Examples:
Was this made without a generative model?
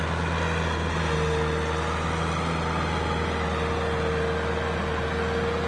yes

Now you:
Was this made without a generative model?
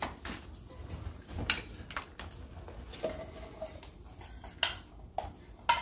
yes